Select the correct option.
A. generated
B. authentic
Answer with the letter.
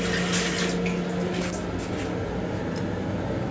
B